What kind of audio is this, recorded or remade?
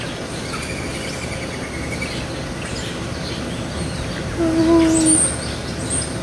recorded